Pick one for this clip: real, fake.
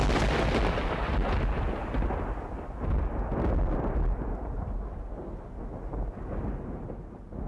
real